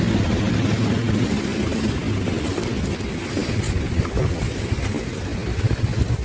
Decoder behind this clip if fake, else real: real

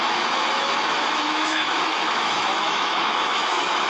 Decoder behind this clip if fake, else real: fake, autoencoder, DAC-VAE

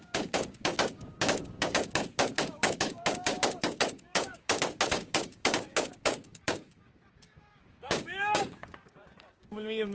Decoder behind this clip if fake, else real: fake, codec, DAC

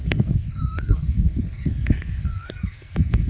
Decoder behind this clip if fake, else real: fake, codec, SNAC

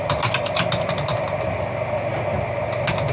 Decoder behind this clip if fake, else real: real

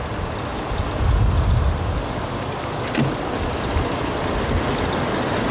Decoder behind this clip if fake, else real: real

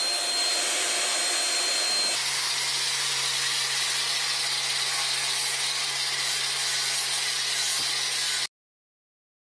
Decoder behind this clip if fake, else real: real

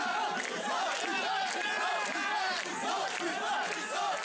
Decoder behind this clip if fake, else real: fake, vocoder, BigVGAN v2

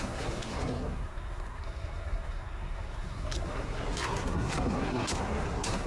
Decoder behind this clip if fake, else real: fake, codec, SNAC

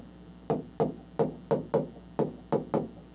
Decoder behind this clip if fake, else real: real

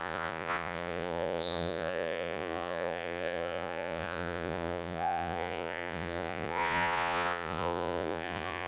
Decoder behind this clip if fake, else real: fake, vocoder, Vocos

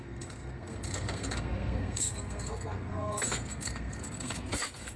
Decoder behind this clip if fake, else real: fake, codec, SNAC